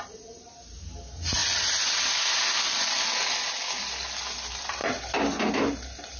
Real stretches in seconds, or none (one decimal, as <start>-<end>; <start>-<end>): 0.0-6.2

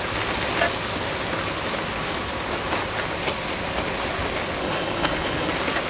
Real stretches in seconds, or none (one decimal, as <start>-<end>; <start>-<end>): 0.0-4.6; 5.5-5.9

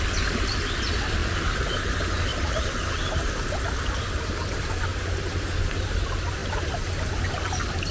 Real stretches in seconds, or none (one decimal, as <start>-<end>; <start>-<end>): 0.0-1.2; 1.8-2.3; 3.0-4.9; 5.4-6.4; 7.0-7.9